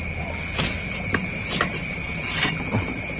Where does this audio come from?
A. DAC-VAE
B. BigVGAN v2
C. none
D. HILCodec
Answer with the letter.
C